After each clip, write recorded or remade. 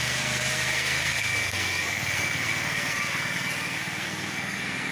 remade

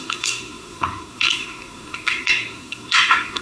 remade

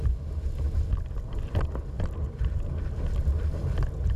recorded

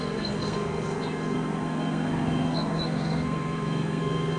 remade